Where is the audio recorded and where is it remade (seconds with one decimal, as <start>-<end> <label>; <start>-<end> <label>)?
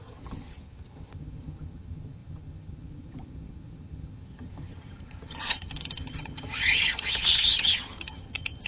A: 0.0-8.7 remade